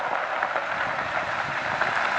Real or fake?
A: real